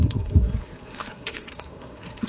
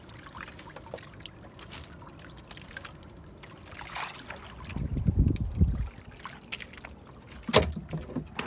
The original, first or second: second